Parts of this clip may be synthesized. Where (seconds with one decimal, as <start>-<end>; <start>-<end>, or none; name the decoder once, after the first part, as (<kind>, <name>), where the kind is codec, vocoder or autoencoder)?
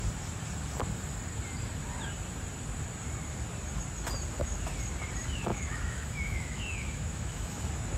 5.5-7.6 (autoencoder, DAC-VAE)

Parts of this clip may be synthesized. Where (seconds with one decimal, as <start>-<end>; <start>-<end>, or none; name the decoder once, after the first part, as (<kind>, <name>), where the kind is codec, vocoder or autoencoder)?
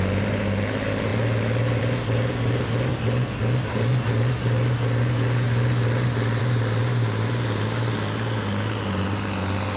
none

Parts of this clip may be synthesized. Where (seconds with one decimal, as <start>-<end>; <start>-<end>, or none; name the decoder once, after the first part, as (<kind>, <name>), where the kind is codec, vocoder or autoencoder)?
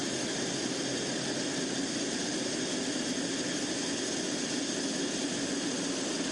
none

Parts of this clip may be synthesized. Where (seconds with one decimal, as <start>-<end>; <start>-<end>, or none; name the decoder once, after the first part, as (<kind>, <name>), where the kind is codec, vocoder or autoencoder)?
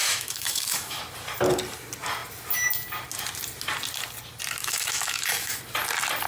0.0-1.0 (autoencoder, DAC-VAE); 4.6-5.6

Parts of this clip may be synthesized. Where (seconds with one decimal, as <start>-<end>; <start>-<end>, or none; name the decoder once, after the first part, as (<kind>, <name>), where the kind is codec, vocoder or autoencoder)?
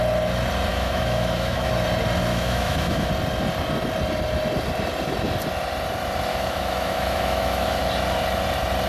0.7-1.7 (autoencoder, DAC-VAE); 2.3-3.1; 6.3-7.8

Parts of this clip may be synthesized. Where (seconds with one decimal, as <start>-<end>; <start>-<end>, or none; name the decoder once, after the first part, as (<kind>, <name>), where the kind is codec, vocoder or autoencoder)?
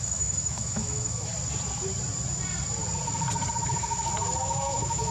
0.0-1.3 (autoencoder, DAC-VAE); 4.4-5.1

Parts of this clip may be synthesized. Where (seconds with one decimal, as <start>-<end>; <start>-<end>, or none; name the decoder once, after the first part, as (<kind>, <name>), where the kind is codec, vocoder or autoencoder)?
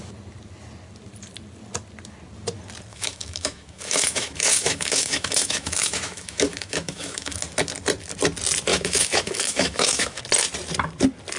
2.9-7.4 (autoencoder, DAC-VAE); 8.7-10.2